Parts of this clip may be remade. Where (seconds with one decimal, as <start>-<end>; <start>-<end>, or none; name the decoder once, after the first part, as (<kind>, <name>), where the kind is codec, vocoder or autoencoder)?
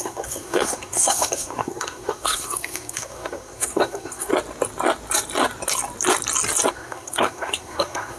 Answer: 0.0-4.3 (codec, SNAC); 6.7-8.2